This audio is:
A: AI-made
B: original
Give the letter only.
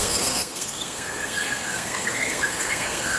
A